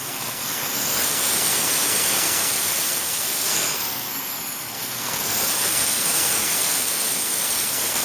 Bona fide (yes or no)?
no